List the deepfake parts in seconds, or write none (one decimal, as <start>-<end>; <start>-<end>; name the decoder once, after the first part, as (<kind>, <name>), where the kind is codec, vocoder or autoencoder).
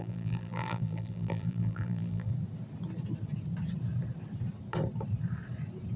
0.0-2.3 (vocoder, BigVGAN v2)